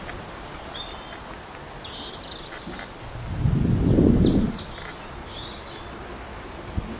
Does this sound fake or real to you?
real